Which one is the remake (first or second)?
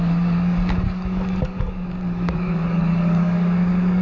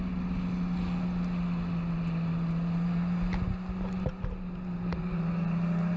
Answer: first